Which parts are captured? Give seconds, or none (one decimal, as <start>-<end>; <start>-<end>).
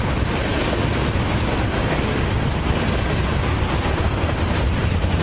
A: 0.0-5.2